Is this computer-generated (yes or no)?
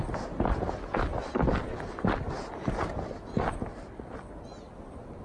no